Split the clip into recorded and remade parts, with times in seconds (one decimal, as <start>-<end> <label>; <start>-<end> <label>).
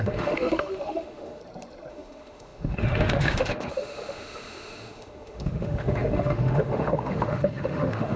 0.0-1.4 remade; 1.4-1.9 recorded; 1.9-8.2 remade